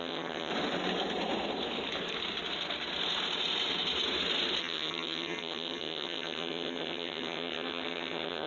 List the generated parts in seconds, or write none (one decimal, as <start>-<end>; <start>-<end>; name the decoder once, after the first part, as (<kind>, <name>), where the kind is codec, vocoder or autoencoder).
0.0-0.5 (vocoder, HiFi-GAN); 4.6-8.5